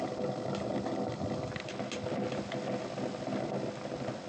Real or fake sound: real